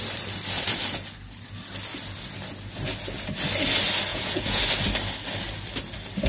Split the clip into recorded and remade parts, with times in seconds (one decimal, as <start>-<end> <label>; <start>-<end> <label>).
0.0-4.1 recorded; 4.1-4.6 remade; 4.6-6.3 recorded